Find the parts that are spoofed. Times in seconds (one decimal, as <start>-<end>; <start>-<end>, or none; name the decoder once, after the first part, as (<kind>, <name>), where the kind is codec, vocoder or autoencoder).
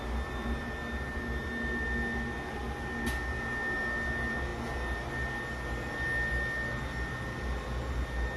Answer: none